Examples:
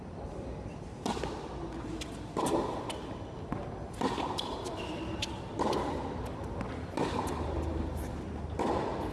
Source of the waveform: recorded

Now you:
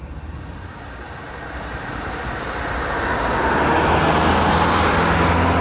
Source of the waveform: recorded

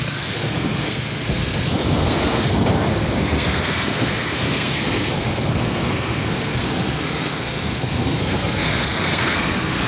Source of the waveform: remade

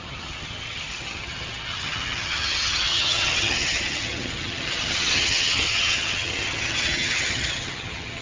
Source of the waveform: remade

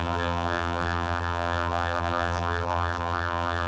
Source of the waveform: remade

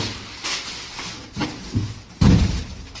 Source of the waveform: recorded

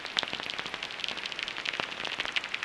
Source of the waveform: recorded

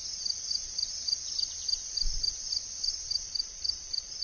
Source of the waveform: recorded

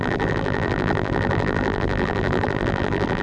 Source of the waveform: remade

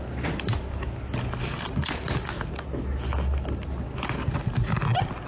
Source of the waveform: recorded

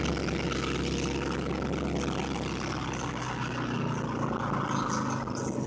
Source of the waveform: recorded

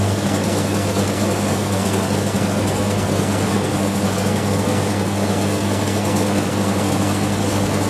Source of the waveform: remade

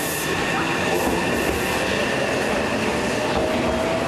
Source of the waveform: recorded